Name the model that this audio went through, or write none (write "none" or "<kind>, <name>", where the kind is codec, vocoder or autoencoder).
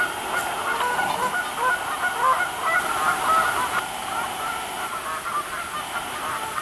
none